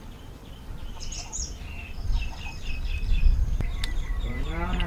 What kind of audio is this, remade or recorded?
recorded